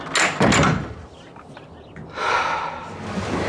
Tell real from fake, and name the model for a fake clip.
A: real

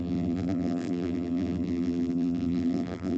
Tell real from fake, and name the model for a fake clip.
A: fake, vocoder, BigVGAN v2